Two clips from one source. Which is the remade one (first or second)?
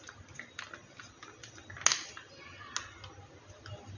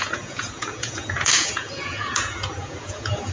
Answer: second